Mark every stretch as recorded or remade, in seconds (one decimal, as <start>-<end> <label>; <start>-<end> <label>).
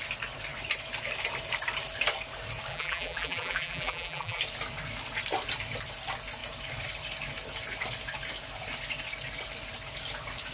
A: 0.0-2.7 recorded; 2.7-4.4 remade; 4.4-10.5 recorded